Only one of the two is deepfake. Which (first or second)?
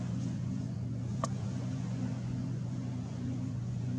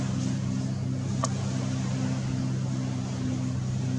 first